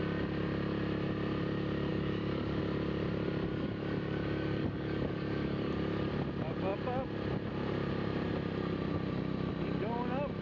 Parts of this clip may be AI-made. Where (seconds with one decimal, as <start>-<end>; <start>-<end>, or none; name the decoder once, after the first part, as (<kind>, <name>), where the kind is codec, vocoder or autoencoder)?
1.9-2.6 (codec, DAC); 3.5-6.1